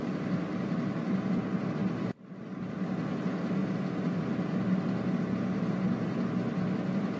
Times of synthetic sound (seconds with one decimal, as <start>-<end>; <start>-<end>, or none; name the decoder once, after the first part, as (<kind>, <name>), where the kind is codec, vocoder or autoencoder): 0.5-1.3 (vocoder, BigVGAN v2); 1.8-2.7